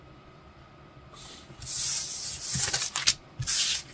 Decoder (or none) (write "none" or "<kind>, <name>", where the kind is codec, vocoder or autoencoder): none